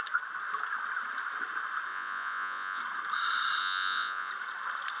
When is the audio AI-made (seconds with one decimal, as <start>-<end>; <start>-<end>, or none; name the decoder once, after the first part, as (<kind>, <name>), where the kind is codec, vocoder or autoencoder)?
1.9-2.8 (vocoder, Vocos); 3.6-4.3